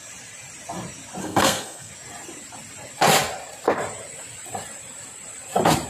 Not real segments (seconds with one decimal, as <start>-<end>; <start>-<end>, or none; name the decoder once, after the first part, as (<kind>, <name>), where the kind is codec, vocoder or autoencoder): 1.2-1.9 (codec, SNAC)